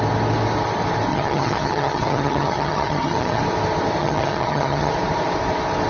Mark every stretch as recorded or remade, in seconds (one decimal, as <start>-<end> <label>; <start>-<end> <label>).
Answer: 0.0-1.1 recorded; 1.1-3.4 remade; 3.4-4.0 recorded; 4.0-4.9 remade; 4.9-5.9 recorded

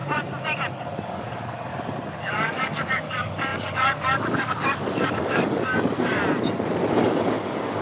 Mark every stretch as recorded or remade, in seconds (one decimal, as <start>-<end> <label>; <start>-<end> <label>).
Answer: 0.0-0.7 recorded; 0.7-1.7 remade; 1.7-2.2 recorded; 2.2-6.2 remade; 6.2-6.9 recorded; 6.9-7.8 remade

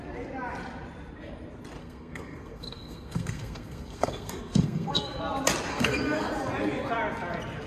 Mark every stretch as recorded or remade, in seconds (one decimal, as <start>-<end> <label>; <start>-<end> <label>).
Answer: 0.0-1.8 recorded; 1.8-5.2 remade; 5.2-5.7 recorded; 5.7-6.3 remade; 6.3-7.7 recorded